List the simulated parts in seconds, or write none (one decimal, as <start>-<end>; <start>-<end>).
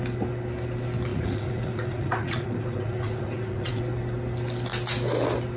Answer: 1.1-3.8